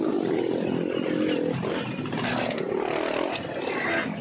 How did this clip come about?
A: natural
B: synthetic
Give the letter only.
A